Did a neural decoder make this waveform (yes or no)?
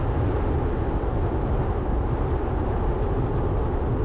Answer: no